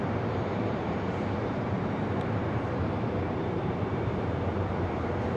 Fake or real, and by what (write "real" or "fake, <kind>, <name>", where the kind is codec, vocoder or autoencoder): fake, vocoder, BigVGAN v2